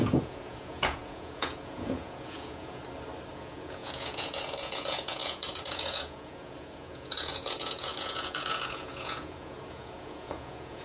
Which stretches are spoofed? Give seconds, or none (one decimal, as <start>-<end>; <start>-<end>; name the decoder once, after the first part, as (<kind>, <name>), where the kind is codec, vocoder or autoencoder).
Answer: 0.0-2.8 (vocoder, Vocos); 3.3-10.8